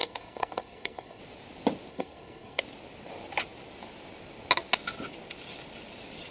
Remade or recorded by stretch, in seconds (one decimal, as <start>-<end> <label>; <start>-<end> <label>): 0.0-1.2 remade; 1.2-1.9 recorded; 1.9-2.6 remade; 2.6-6.3 recorded